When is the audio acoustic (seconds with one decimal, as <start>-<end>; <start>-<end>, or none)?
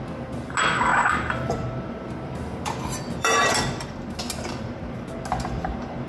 0.0-0.9; 4.2-6.1